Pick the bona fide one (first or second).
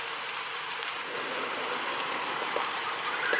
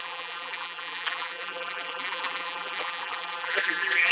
first